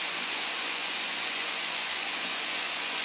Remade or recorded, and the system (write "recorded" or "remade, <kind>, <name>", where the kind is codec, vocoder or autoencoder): remade, vocoder, Vocos